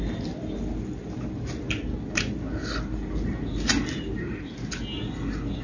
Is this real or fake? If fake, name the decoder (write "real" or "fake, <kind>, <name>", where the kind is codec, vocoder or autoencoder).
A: real